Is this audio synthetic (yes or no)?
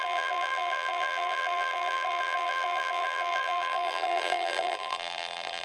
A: yes